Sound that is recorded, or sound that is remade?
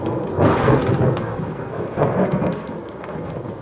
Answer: remade